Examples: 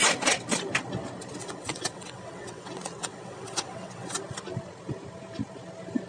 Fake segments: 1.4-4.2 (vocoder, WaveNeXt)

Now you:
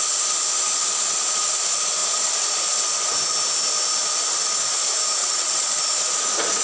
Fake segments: 5.2-5.8 (vocoder, WaveNeXt)

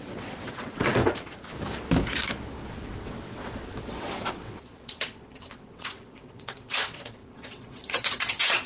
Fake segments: 0.0-1.0 (vocoder, WaveNeXt); 2.7-8.7

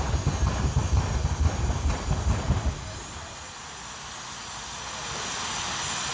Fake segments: none

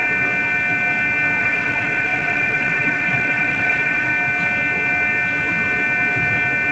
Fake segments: 1.4-4.1 (vocoder, WaveNeXt)

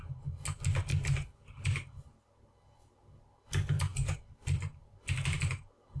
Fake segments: none

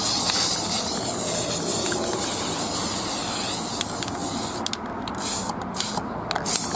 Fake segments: none